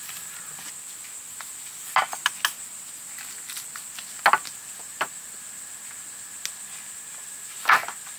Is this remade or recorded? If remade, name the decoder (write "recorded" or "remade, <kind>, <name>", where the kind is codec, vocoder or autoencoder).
recorded